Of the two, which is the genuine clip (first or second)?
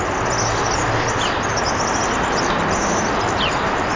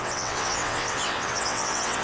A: first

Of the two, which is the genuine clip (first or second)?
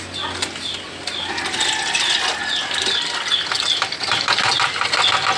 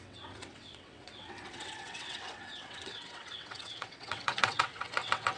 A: first